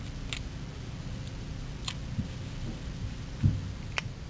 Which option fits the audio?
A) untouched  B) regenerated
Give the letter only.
A